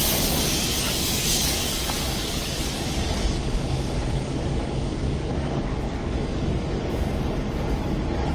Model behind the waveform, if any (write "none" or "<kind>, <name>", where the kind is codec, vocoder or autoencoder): codec, DAC